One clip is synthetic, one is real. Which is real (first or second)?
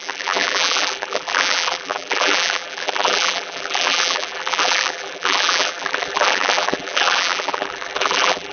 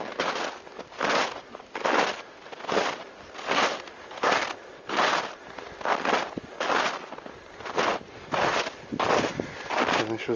second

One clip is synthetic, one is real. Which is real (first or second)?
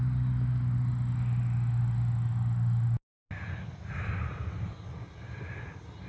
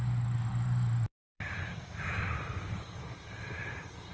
first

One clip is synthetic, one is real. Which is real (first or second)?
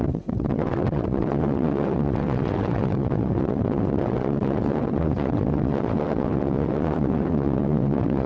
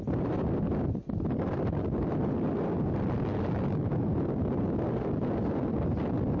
second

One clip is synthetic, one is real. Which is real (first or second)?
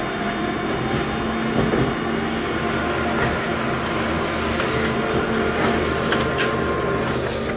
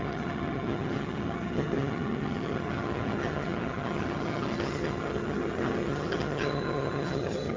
first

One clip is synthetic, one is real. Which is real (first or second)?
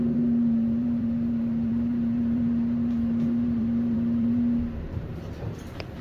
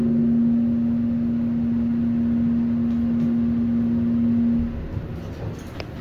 second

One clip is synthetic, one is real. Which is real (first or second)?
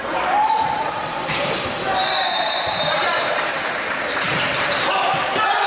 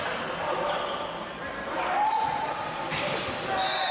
second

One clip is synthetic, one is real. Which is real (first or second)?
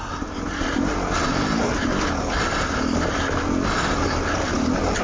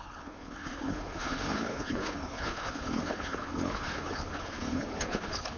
first